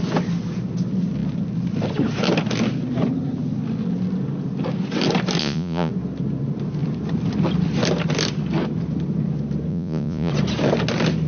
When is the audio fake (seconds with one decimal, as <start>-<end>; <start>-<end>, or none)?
5.4-5.9; 9.7-10.3